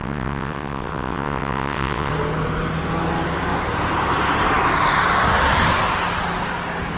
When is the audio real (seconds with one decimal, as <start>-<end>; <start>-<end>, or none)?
2.1-7.0